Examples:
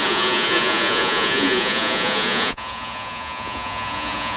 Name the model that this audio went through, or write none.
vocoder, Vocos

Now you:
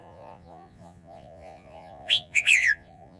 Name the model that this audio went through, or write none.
vocoder, Vocos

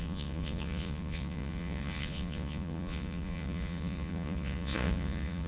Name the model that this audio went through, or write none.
vocoder, Vocos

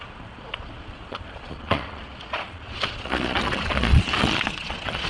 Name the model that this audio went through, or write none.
vocoder, Vocos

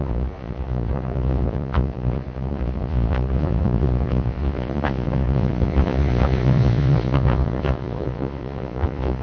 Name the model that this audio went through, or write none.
vocoder, Vocos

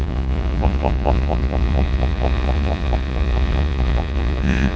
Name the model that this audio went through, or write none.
vocoder, Vocos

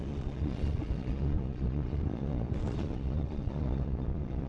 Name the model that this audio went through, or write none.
vocoder, Vocos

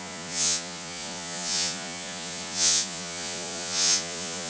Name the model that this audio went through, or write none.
vocoder, Vocos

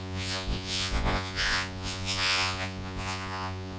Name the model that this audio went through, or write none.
vocoder, Vocos